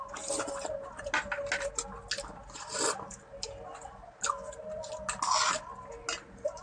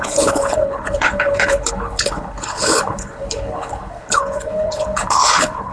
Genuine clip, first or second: first